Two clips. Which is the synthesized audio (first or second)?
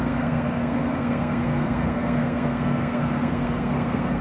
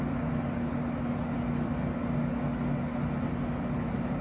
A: first